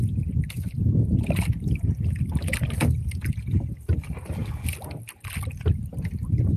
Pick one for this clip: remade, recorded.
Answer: recorded